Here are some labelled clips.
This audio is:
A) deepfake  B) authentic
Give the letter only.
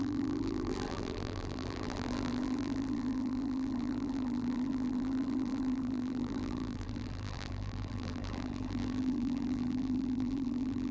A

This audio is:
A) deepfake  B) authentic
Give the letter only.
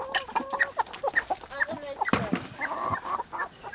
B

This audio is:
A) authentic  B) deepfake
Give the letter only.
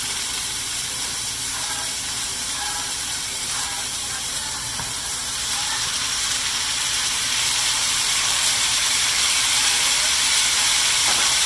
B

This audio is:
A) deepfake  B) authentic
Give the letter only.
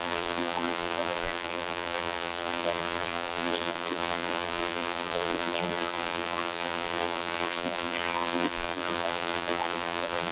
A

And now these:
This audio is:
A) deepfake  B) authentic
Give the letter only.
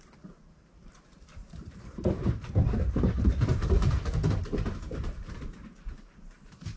A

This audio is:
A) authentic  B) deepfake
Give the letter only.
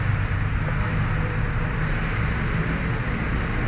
A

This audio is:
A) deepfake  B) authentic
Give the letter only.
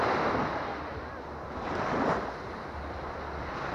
B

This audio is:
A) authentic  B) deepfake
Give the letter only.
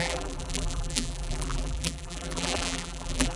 B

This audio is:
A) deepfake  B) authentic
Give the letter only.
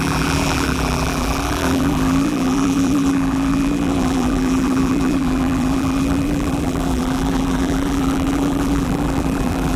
A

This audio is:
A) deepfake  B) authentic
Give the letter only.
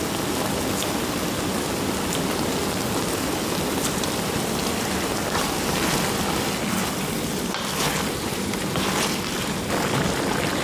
B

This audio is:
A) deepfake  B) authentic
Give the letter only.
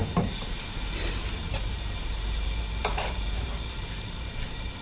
A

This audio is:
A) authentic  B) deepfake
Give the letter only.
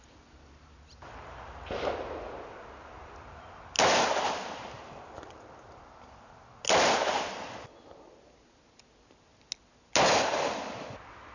A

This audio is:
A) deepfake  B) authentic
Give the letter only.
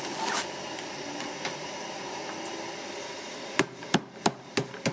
B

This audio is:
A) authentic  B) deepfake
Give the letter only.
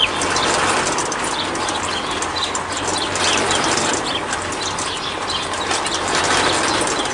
A